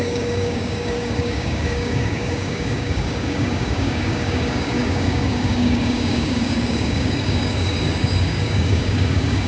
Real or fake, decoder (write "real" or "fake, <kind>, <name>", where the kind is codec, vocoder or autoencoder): fake, codec, DAC